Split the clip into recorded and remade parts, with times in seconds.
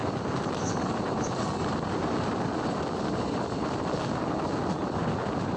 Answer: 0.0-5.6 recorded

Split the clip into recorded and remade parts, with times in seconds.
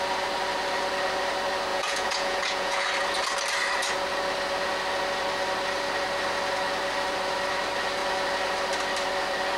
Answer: 0.0-1.7 recorded; 1.7-2.8 remade; 2.8-9.6 recorded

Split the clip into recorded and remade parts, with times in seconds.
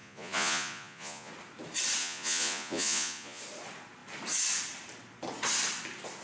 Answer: 0.0-1.3 remade; 1.3-2.0 recorded; 2.0-3.4 remade; 3.4-6.2 recorded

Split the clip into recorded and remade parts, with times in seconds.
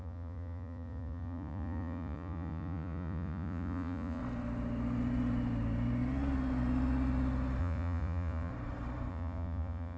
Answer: 0.0-4.2 remade; 4.2-7.6 recorded; 7.6-8.5 remade; 8.5-9.1 recorded; 9.1-10.0 remade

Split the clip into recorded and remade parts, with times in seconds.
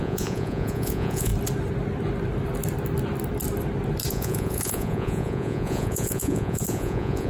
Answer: 0.0-1.3 remade; 1.3-4.1 recorded; 4.1-7.3 remade